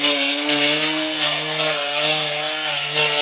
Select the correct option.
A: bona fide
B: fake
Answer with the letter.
B